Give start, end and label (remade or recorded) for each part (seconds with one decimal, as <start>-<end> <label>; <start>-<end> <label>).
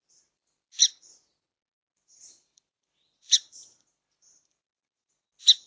0.0-1.9 recorded; 1.9-5.3 remade; 5.3-5.7 recorded